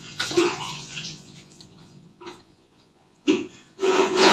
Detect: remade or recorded remade